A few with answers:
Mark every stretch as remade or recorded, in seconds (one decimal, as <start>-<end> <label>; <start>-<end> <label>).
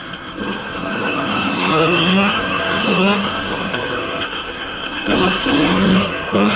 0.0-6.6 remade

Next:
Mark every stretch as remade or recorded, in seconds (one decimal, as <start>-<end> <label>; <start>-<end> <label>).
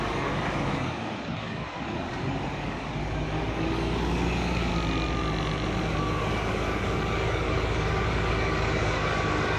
0.0-4.7 remade; 4.7-5.9 recorded; 5.9-9.6 remade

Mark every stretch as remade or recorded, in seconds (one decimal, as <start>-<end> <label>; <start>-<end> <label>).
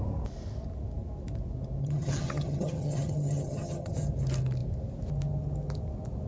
0.0-1.8 recorded; 1.8-3.9 remade; 3.9-6.3 recorded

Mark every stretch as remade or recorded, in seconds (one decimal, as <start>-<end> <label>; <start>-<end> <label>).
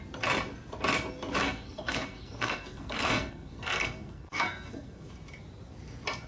0.0-1.4 recorded; 1.4-5.1 remade; 5.1-6.3 recorded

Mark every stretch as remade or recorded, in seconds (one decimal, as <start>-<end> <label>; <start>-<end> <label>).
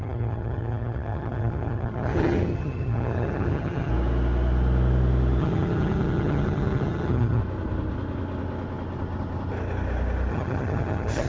0.0-3.9 remade; 3.9-5.4 recorded; 5.4-7.4 remade; 7.4-10.3 recorded; 10.3-11.3 remade